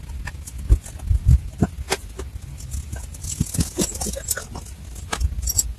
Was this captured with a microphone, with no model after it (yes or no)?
yes